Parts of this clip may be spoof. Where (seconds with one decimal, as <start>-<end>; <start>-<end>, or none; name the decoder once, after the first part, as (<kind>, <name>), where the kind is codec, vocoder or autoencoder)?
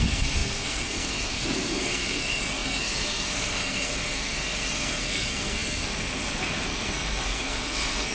0.0-8.1 (codec, SNAC)